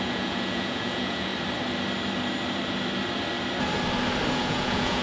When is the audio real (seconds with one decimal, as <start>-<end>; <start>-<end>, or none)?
1.3-4.3